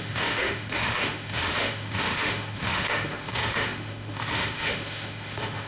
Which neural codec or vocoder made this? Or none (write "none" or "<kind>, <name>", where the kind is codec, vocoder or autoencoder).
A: autoencoder, DAC-VAE